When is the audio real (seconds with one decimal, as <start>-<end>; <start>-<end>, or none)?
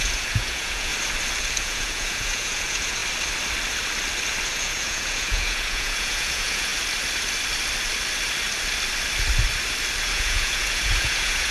0.9-1.4; 3.0-4.5; 6.7-10.0